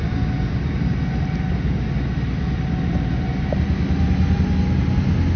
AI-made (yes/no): no